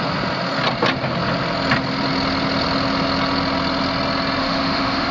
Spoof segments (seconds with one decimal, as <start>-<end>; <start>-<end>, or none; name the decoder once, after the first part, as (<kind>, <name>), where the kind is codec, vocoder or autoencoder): 4.4-5.1 (autoencoder, DAC-VAE)